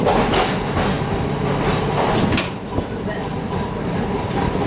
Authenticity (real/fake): real